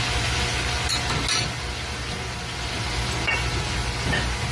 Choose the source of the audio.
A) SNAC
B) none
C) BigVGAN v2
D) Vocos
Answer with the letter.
B